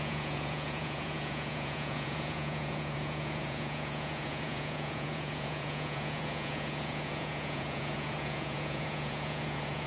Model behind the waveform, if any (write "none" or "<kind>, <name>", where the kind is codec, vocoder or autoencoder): vocoder, Vocos